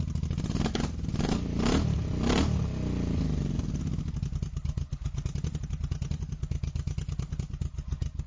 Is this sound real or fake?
real